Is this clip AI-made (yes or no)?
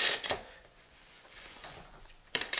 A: yes